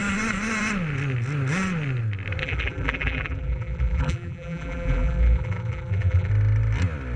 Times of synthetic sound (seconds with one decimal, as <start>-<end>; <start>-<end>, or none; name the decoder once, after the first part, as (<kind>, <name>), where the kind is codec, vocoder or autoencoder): 2.4-6.3 (vocoder, BigVGAN v2)